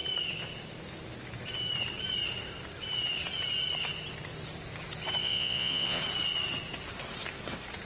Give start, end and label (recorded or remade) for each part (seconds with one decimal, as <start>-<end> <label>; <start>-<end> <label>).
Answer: 0.0-5.2 recorded; 5.2-6.0 remade; 6.0-7.9 recorded